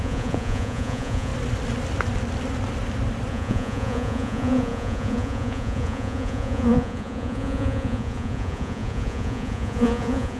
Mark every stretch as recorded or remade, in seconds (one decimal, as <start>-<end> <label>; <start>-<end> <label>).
0.0-1.3 remade; 1.3-3.3 recorded; 3.3-10.4 remade